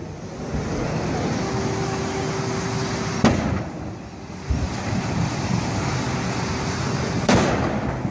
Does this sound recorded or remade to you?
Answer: recorded